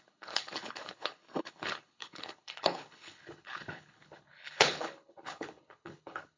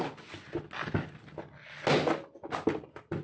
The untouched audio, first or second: second